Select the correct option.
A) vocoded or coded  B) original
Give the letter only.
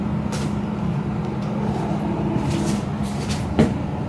A